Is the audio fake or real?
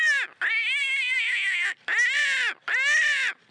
real